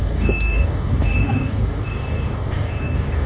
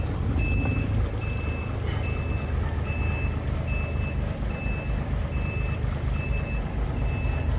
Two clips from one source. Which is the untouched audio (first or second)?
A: second